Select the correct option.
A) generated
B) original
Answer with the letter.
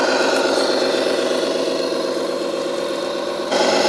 A